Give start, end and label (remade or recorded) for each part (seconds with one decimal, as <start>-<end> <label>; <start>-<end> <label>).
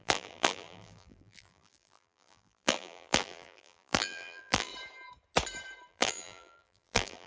0.0-4.7 remade; 4.7-5.9 recorded; 5.9-7.3 remade